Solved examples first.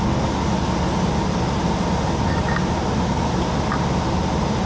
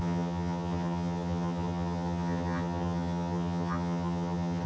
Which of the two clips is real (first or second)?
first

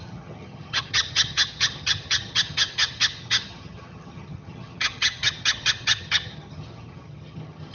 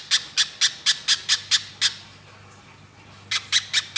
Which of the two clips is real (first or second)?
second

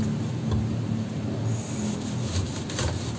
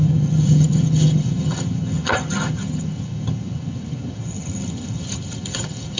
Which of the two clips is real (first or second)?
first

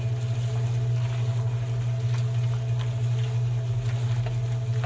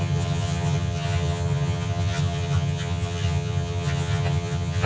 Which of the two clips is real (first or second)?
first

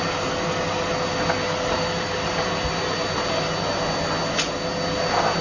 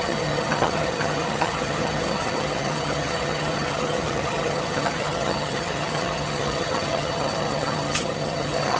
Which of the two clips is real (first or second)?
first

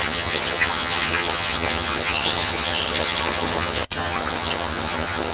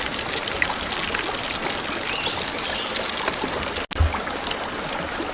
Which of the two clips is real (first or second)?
second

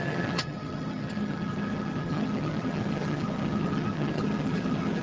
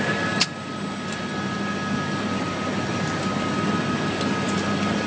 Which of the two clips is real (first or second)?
second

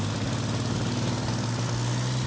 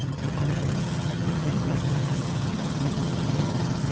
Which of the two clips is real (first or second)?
first